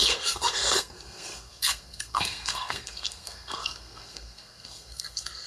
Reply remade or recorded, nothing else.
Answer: remade